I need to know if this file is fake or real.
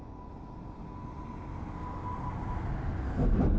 real